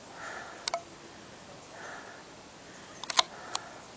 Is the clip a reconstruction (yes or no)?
no